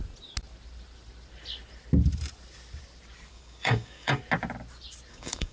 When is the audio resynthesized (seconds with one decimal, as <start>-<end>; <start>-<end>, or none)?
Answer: 3.3-4.2; 5.1-5.5